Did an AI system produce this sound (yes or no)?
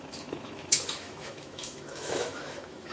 yes